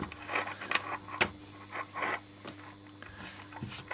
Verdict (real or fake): real